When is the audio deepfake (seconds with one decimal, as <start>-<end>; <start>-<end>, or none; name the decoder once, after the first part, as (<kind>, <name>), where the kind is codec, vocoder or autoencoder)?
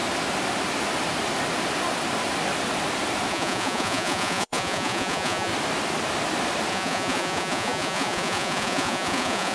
3.3-5.5 (vocoder, Vocos); 6.7-9.5